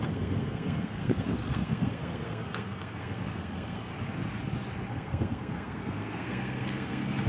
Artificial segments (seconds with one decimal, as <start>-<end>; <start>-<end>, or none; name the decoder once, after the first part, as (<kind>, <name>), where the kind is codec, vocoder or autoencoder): 0.0-3.9 (codec, SNAC); 4.9-7.3